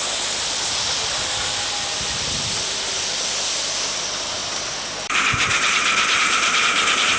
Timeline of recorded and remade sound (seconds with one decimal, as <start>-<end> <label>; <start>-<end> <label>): 0.0-4.4 remade; 4.4-5.0 recorded; 5.0-7.2 remade